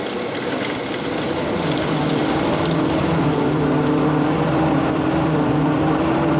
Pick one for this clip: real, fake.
fake